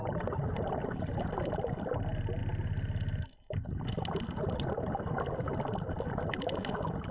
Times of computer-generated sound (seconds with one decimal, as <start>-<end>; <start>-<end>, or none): none